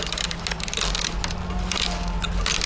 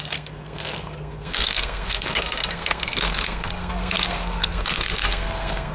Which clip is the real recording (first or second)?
first